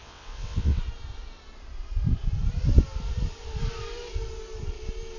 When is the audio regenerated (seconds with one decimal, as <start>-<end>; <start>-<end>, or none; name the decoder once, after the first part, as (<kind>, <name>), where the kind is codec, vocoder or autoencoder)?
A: 0.0-0.8 (vocoder, WaveNeXt)